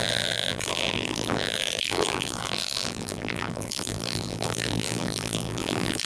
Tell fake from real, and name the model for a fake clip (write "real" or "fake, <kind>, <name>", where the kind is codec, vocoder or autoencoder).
fake, vocoder, BigVGAN v2